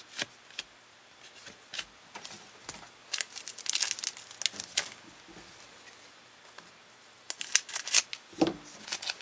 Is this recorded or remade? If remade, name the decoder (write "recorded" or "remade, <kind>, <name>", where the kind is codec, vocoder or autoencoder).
recorded